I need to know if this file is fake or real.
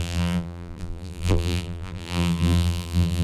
fake